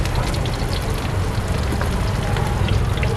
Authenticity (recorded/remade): recorded